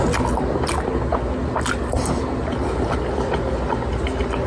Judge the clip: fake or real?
real